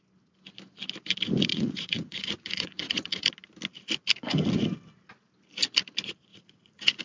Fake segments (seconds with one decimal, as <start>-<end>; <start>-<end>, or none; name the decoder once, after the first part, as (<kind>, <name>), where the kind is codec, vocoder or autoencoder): 1.5-3.3 (vocoder, Vocos); 6.3-7.0